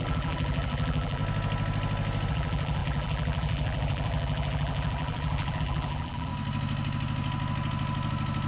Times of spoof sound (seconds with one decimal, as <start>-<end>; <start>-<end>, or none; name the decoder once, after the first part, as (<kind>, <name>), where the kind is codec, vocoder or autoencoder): 0.0-1.2 (vocoder, BigVGAN v2); 2.3-6.3